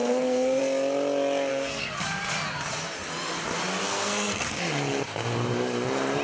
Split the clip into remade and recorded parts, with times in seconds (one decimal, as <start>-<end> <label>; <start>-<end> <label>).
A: 0.0-0.6 remade; 0.6-1.5 recorded; 1.5-2.0 remade; 2.0-3.8 recorded; 3.8-4.6 remade; 4.6-6.2 recorded